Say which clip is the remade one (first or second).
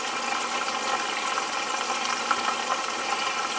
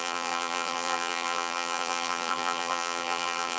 second